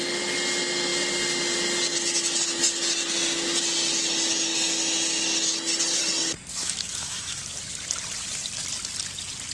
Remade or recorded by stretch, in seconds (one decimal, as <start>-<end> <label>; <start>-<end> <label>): 0.0-6.5 recorded; 6.5-7.4 remade; 7.4-9.5 recorded